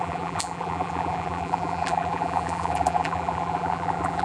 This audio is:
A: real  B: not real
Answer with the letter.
B